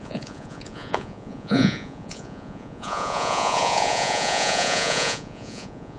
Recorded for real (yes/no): no